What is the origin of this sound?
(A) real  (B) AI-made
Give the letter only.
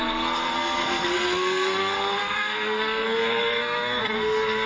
B